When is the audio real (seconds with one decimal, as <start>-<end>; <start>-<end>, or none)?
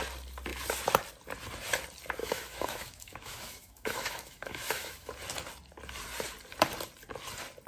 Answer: 0.0-2.2; 5.1-7.7